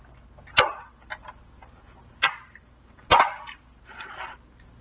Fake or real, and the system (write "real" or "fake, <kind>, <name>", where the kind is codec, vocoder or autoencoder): real